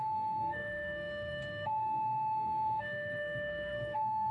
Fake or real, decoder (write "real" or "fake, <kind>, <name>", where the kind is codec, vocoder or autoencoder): fake, codec, SNAC